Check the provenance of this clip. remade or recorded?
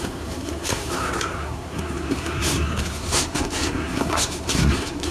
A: remade